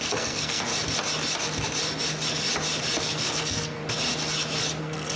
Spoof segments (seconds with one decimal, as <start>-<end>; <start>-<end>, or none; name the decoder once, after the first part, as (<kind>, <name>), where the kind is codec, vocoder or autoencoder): 0.0-0.7 (codec, SNAC); 3.0-3.8; 4.8-5.2